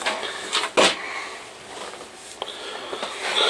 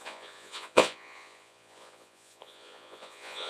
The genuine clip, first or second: first